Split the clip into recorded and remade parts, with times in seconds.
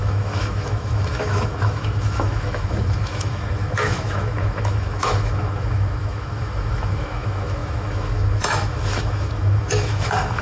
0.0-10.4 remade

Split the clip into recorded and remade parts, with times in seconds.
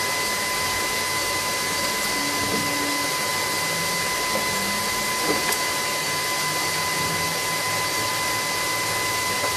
0.0-9.6 recorded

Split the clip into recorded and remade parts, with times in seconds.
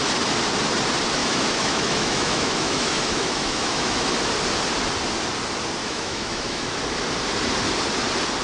0.0-1.2 recorded; 1.2-4.2 remade; 4.2-5.8 recorded; 5.8-6.8 remade; 6.8-8.4 recorded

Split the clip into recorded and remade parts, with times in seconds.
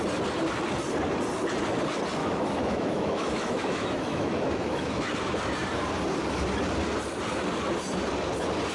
0.0-2.2 recorded; 2.2-5.1 remade; 5.1-8.7 recorded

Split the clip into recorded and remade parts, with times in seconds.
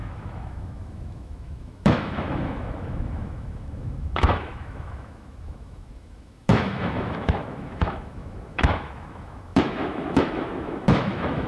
0.0-11.5 remade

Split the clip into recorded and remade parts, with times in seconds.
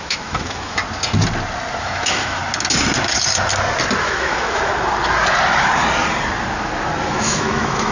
0.0-0.8 remade; 0.8-1.8 recorded; 1.8-2.4 remade; 2.4-4.0 recorded; 4.0-4.7 remade; 4.7-7.0 recorded; 7.0-7.9 remade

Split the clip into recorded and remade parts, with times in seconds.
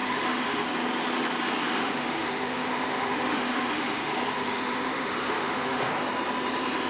0.0-0.7 remade; 0.7-1.8 recorded; 1.8-5.9 remade; 5.9-6.9 recorded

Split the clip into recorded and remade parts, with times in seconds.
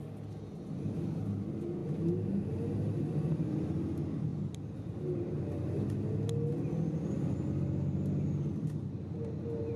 0.0-9.8 recorded